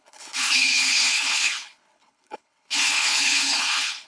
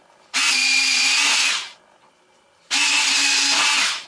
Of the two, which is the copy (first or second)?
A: first